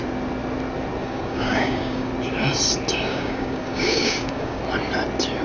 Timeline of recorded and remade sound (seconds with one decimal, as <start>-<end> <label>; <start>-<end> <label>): 0.0-1.0 recorded; 1.0-2.1 remade; 2.1-3.1 recorded; 3.1-4.6 remade; 4.6-5.4 recorded